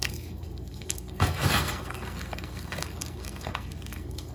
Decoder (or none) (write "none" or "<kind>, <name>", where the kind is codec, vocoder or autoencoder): codec, SNAC